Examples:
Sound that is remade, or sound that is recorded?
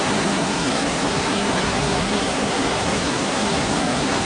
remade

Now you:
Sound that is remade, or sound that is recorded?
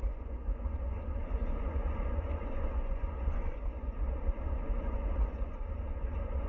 remade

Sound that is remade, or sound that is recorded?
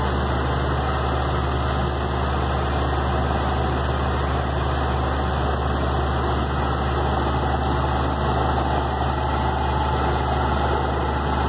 recorded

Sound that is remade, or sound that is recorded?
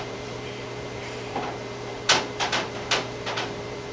remade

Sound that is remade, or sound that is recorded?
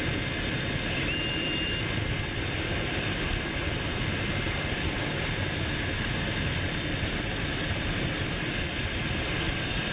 recorded